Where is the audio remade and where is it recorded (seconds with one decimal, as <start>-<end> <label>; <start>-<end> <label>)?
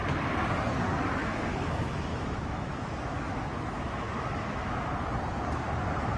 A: 0.0-1.2 recorded; 1.2-4.9 remade; 4.9-6.2 recorded